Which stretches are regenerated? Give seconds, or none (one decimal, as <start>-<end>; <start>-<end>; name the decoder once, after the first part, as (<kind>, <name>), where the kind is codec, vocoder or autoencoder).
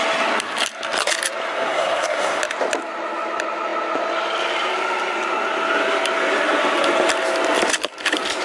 1.5-2.4 (codec, SNAC)